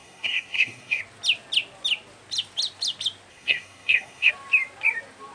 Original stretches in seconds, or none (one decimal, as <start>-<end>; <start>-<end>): 1.0-3.3; 4.3-5.3